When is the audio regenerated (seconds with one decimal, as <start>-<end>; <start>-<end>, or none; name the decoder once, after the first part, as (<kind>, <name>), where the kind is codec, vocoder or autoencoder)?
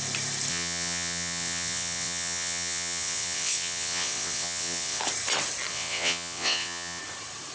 0.5-5.0 (vocoder, WaveNeXt); 5.7-7.0